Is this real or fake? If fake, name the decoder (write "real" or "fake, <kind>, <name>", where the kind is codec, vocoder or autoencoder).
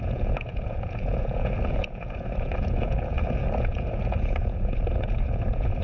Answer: fake, vocoder, Vocos